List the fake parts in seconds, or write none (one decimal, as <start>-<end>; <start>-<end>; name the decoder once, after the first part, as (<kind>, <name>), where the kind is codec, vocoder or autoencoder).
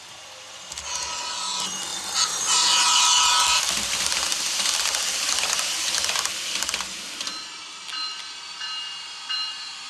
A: 1.9-6.6 (vocoder, BigVGAN v2)